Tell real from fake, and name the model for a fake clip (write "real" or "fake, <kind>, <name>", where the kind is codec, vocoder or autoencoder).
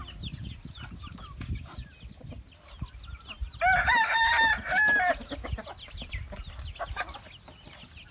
real